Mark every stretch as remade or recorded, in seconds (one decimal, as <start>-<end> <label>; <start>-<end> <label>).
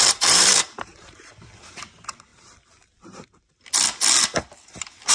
0.0-2.3 remade; 2.3-5.1 recorded